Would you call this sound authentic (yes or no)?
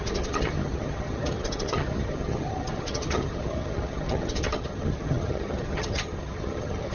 no